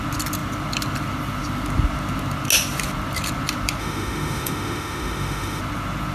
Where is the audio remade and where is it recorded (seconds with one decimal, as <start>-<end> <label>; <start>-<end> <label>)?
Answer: 0.0-3.8 recorded; 3.8-5.6 remade; 5.6-6.1 recorded